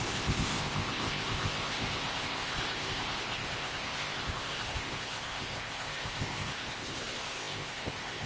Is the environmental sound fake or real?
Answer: fake